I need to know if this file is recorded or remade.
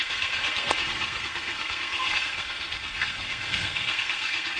remade